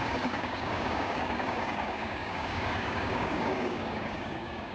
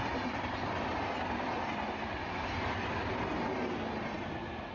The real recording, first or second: second